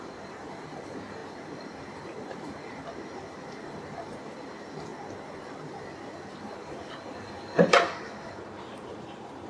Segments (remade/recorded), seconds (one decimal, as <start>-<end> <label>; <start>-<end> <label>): 0.0-4.9 remade; 4.9-6.3 recorded; 6.3-9.5 remade